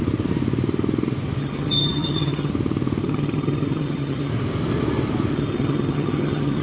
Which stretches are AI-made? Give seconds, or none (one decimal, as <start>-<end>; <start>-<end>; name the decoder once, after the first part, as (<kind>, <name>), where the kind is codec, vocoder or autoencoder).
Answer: 1.4-2.5 (vocoder, HiFi-GAN); 3.0-4.3; 5.3-6.6